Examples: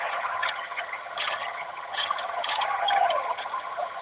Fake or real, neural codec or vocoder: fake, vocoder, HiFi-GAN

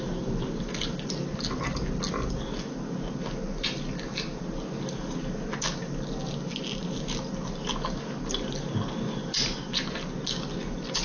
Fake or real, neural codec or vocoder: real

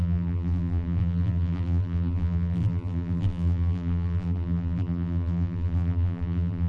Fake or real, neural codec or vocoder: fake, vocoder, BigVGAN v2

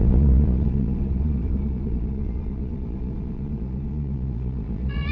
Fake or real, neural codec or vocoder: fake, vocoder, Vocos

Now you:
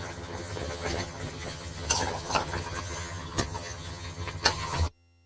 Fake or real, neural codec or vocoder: fake, vocoder, HiFi-GAN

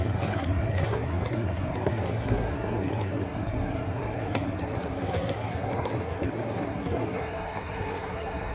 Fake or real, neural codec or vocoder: fake, codec, SNAC